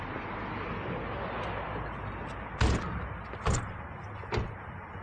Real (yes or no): yes